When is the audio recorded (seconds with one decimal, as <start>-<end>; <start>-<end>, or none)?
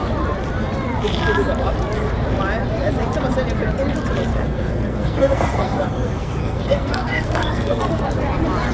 0.0-4.3; 8.1-8.7